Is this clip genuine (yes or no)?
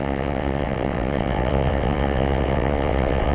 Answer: no